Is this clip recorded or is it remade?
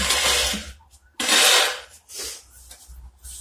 recorded